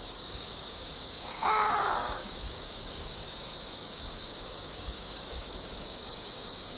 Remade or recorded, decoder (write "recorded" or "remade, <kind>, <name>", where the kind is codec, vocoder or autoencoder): remade, codec, DAC